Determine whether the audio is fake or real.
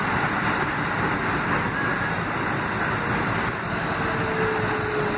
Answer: real